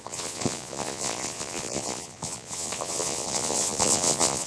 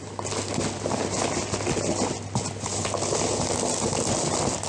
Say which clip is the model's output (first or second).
first